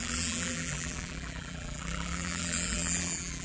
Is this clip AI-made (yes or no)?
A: yes